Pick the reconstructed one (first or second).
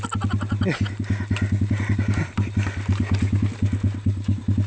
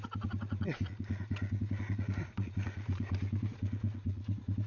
second